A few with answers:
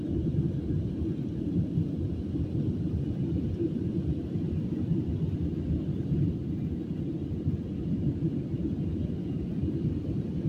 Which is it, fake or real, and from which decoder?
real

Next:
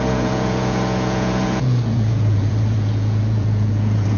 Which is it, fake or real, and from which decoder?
fake, vocoder, Vocos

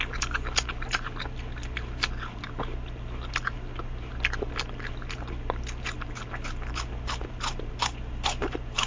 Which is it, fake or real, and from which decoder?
real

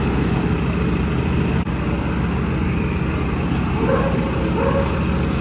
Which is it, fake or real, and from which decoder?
real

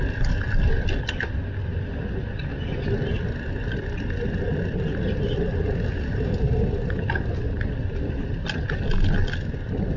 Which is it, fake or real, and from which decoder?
real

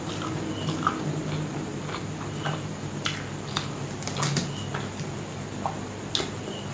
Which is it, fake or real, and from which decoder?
real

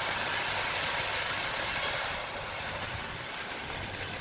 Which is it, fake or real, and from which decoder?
real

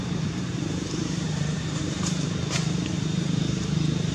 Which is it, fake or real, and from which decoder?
fake, vocoder, BigVGAN v2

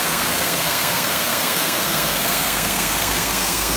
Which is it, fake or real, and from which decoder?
fake, codec, SNAC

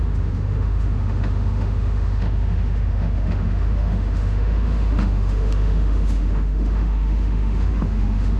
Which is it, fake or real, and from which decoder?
fake, autoencoder, DAC-VAE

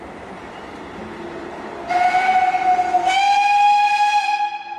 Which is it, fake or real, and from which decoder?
real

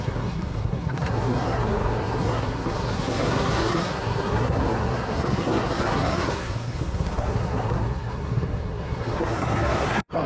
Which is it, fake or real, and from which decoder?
fake, codec, SNAC